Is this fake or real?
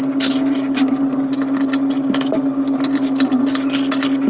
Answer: real